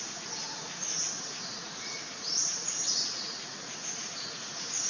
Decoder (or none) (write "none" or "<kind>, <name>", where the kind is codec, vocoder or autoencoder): vocoder, Vocos